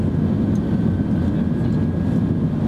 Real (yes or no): yes